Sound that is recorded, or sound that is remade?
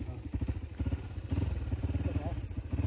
recorded